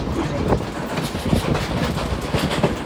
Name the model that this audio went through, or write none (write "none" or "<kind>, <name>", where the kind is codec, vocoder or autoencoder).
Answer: none